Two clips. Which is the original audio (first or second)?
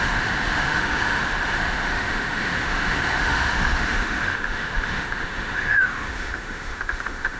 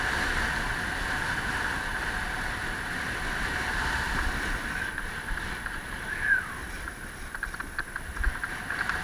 second